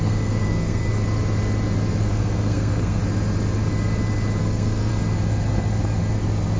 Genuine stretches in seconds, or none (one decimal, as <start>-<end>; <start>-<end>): 0.9-2.0; 3.0-4.4; 4.9-6.6